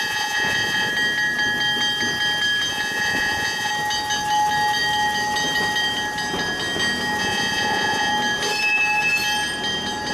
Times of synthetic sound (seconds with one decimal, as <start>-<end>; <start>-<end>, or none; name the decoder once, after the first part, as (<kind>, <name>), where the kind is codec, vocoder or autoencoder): 0.0-0.9 (vocoder, Vocos); 2.7-3.7; 7.2-8.1

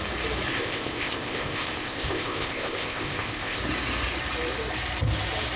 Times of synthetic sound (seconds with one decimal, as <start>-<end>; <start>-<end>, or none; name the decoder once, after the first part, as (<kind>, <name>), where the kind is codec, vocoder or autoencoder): 0.5-3.6 (codec, ZipCodec)

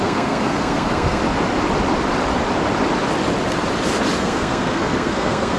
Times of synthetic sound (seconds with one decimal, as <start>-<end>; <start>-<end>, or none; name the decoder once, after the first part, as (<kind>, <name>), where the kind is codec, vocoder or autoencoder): 0.0-1.2 (codec, SNAC); 4.2-5.6

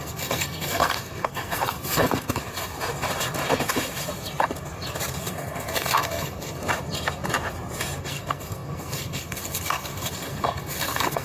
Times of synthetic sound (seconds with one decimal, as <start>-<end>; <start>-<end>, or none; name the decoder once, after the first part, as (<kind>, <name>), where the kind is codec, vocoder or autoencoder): 0.0-2.4 (codec, SNAC); 5.2-6.6; 8.0-11.2